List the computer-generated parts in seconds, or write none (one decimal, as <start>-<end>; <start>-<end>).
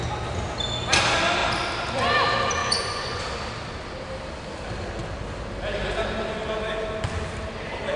2.6-3.2